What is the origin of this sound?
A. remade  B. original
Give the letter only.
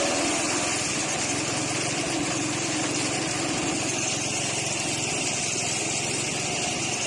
B